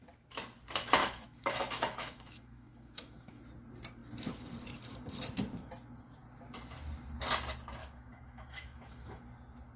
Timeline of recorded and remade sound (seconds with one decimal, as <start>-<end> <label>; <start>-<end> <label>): 0.0-1.0 recorded; 1.0-3.4 remade; 3.4-7.8 recorded; 7.8-9.2 remade; 9.2-9.8 recorded